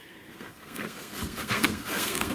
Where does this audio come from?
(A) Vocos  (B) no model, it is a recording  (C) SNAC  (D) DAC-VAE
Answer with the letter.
C